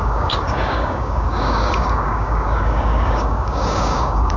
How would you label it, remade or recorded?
remade